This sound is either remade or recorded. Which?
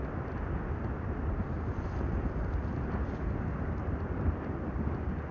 recorded